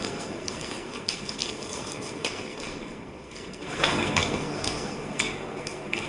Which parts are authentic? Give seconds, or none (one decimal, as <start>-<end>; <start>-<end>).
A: none